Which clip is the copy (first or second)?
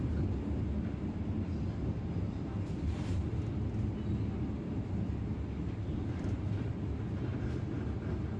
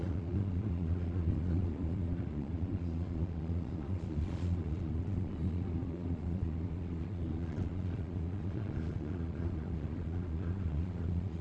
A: second